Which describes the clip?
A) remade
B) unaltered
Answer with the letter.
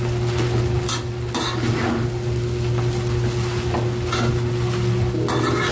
B